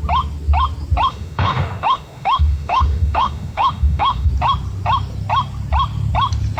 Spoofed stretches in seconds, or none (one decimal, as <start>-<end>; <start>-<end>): 1.1-4.3